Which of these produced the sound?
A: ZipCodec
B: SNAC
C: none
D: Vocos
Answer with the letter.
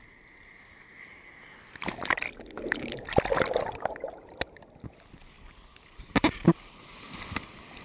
C